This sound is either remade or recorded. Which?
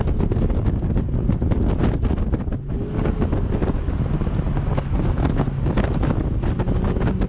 recorded